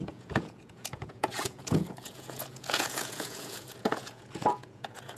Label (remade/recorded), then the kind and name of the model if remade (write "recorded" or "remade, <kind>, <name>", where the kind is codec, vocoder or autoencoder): remade, vocoder, Vocos